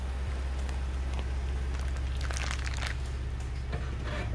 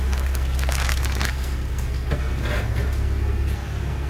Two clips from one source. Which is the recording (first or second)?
first